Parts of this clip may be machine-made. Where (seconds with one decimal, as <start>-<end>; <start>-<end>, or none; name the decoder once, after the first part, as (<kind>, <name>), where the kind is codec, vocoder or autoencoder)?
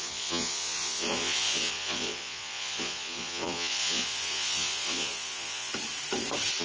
0.0-5.7 (vocoder, Vocos)